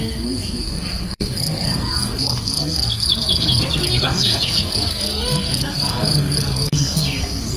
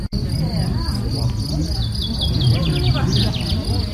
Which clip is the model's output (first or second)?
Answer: first